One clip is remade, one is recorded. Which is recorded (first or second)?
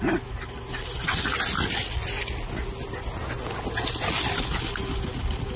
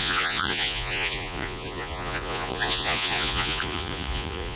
first